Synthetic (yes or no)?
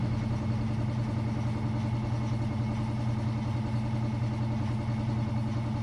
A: no